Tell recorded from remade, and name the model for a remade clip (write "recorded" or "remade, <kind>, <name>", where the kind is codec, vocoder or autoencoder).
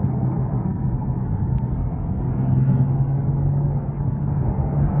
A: remade, codec, SNAC